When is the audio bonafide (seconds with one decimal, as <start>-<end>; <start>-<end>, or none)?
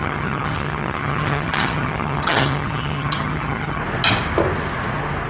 3.8-5.3